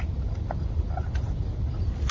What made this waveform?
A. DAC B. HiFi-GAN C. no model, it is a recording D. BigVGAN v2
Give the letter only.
C